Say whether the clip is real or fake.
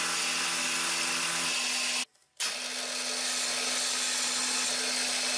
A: real